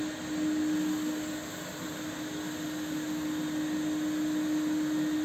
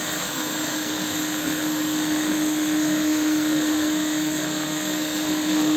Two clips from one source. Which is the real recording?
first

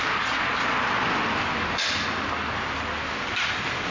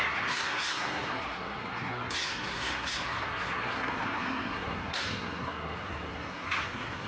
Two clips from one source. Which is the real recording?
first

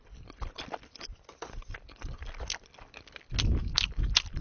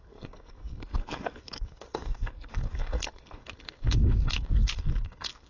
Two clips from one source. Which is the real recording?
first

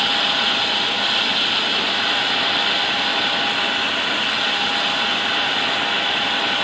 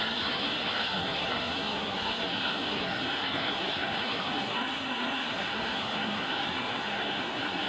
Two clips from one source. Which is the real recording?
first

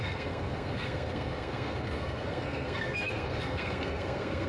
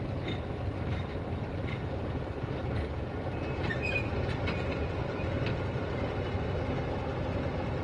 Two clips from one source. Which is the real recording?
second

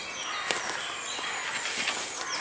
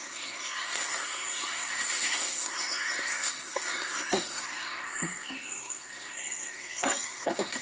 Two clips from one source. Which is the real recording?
first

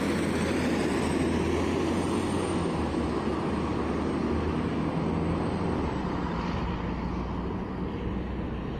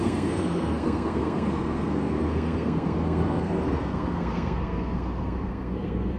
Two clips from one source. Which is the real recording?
first